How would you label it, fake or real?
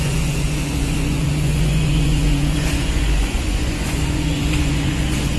fake